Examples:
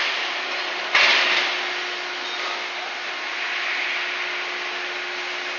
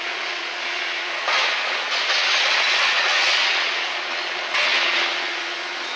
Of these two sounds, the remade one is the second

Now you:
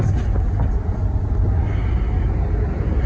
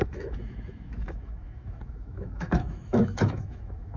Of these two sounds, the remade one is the second